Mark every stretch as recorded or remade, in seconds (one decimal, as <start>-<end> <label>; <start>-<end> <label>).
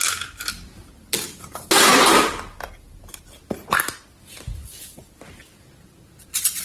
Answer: 0.0-6.6 recorded